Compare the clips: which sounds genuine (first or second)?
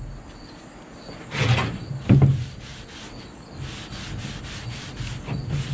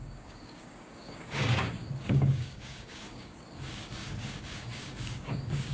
first